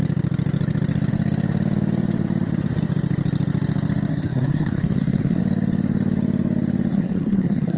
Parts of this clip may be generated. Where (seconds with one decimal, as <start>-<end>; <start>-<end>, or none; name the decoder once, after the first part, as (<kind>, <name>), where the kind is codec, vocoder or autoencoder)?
4.1-5.4 (codec, SNAC); 6.9-7.8